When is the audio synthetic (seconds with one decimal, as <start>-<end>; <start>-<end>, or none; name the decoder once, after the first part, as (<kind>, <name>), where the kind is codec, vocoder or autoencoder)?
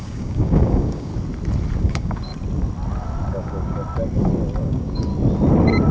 0.0-1.1 (codec, DAC); 1.8-2.3; 3.3-3.8; 4.6-5.1